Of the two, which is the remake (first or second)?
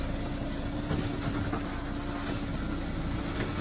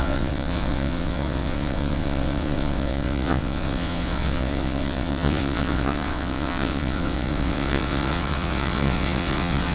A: second